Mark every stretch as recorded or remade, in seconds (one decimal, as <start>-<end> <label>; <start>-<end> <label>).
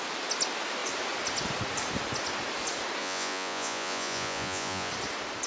0.0-3.0 recorded; 3.0-4.9 remade; 4.9-5.5 recorded